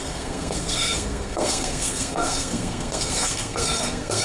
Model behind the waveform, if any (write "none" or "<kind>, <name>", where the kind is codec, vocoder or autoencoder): codec, SNAC